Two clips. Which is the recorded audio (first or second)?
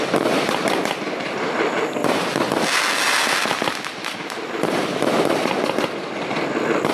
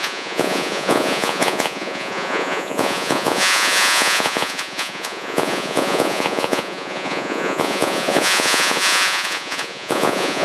first